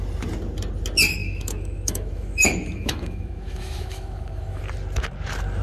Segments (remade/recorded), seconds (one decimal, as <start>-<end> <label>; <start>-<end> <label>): 0.0-1.2 recorded; 1.2-4.6 remade; 4.6-5.6 recorded